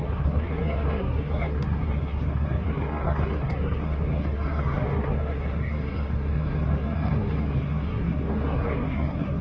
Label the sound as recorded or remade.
remade